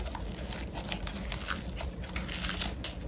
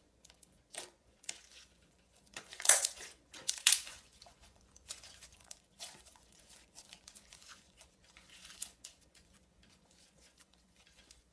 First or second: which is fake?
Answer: second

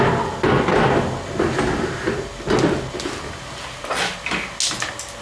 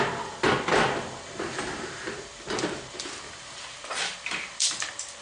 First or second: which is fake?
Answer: second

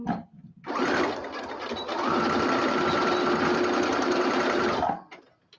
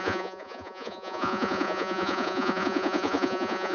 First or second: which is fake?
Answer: second